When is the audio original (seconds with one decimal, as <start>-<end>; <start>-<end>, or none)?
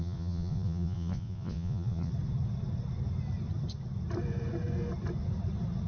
2.1-5.9